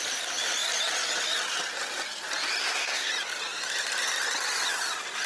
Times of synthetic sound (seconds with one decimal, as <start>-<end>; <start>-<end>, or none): 2.6-3.1